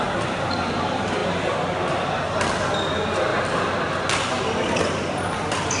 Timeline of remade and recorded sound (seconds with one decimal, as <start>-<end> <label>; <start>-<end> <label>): 0.0-5.8 recorded